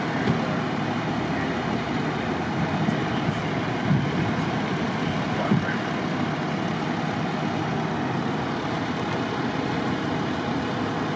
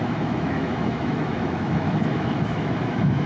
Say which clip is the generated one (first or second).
second